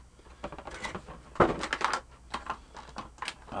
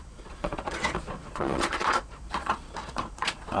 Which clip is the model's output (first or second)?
second